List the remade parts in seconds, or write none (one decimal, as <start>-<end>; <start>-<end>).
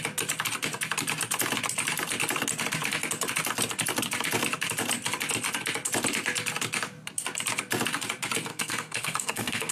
8.5-9.7